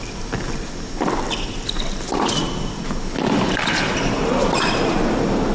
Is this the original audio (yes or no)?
yes